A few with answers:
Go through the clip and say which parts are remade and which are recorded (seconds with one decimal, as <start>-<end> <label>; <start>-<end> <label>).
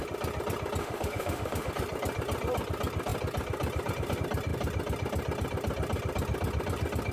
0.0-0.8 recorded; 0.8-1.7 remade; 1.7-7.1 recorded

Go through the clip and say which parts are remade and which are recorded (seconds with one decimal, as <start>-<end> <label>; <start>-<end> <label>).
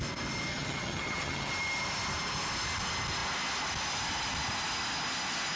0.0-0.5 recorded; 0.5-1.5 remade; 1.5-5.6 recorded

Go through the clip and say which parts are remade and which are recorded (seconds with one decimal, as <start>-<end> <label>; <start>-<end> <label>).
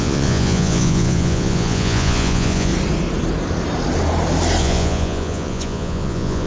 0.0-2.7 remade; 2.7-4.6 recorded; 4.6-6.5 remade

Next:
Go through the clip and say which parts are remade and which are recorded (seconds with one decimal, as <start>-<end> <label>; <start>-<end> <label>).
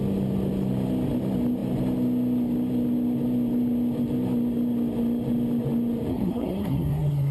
0.0-6.1 recorded; 6.1-7.3 remade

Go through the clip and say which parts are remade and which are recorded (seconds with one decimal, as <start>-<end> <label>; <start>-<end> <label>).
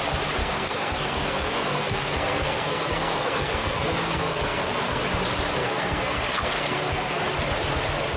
0.0-0.4 recorded; 0.4-5.0 remade; 5.0-5.6 recorded; 5.6-7.2 remade; 7.2-8.2 recorded